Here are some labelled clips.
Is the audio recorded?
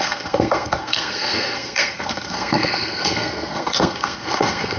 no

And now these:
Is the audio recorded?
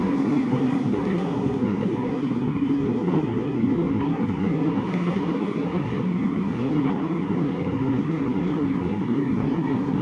no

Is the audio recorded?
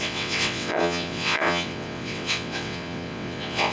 no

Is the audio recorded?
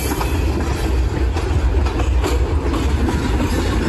yes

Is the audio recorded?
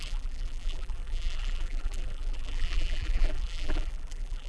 no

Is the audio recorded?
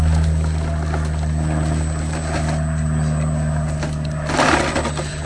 yes